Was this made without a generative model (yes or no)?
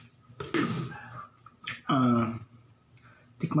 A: yes